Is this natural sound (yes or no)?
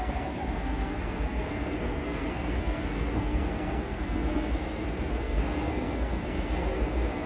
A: no